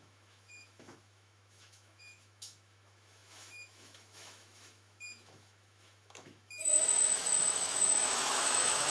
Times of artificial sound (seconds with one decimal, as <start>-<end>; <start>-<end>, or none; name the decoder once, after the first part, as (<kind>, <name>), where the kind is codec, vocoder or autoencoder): 0.0-8.9 (autoencoder, DAC-VAE)